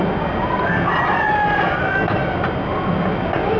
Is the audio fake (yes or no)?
no